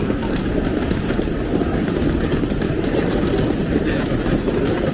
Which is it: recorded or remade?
recorded